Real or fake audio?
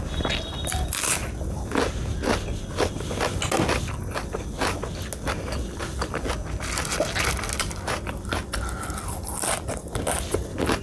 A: real